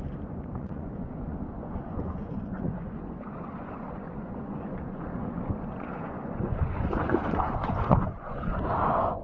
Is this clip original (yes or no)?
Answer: no